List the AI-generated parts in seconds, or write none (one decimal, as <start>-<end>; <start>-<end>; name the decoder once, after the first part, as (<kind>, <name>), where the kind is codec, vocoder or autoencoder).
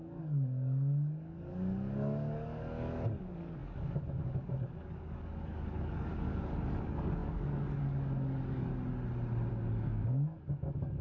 0.0-8.7 (codec, DAC); 9.5-11.0